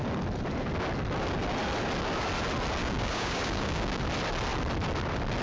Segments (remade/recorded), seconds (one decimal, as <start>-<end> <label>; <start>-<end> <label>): 0.0-2.8 recorded; 2.8-4.0 remade; 4.0-5.4 recorded